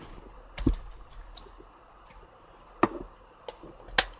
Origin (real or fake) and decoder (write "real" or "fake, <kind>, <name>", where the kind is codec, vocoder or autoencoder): real